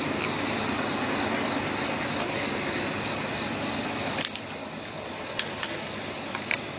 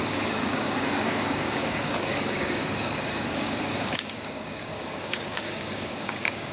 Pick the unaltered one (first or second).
first